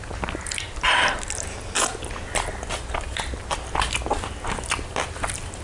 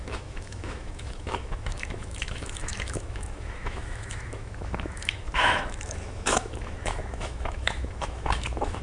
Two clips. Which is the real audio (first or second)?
first